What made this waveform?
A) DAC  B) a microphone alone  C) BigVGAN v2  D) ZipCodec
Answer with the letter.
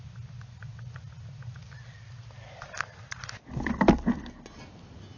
B